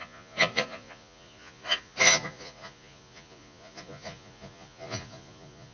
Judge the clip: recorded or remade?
remade